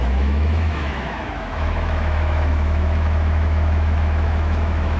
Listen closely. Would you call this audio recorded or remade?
remade